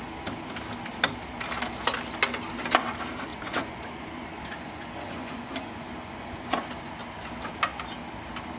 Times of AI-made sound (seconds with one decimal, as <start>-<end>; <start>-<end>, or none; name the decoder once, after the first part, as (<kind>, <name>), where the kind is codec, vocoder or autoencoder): 3.3-6.9 (vocoder, Vocos)